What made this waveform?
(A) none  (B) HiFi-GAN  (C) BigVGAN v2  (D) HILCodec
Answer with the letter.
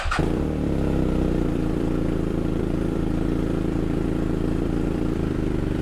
C